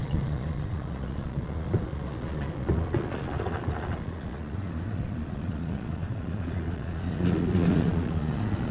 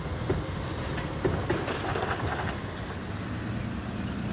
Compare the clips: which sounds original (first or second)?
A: second